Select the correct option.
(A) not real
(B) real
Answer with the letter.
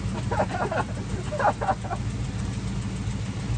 B